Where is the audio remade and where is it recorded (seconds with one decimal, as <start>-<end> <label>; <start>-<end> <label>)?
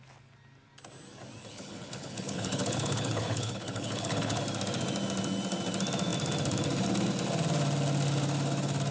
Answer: 0.0-1.4 recorded; 1.4-4.4 remade; 4.4-8.9 recorded